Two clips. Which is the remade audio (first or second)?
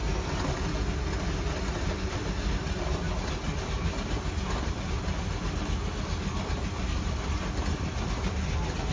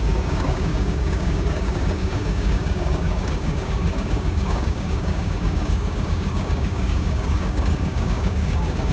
second